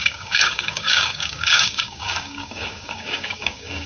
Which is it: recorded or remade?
remade